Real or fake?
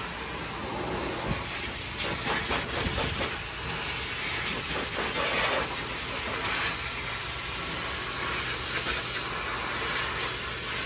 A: real